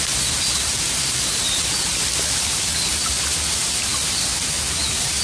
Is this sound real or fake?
fake